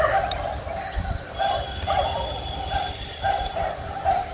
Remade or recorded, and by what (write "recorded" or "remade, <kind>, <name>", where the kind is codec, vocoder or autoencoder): recorded